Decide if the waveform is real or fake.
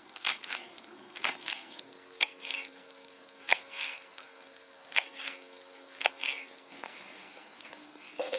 fake